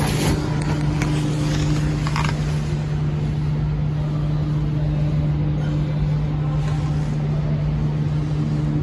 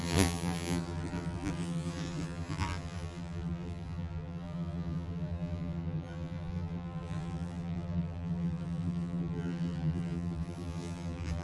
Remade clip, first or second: second